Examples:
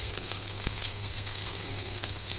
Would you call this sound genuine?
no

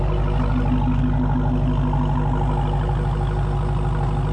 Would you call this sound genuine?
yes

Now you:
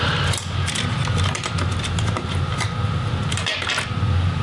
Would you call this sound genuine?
yes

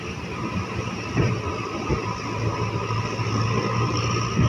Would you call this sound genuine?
yes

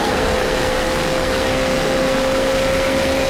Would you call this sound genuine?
no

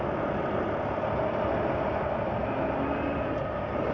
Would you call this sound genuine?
yes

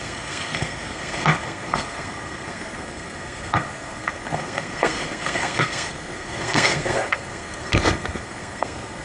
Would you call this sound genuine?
no